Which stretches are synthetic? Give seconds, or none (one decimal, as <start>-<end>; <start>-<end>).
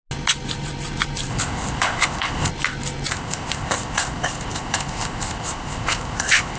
1.3-2.5; 3.1-6.6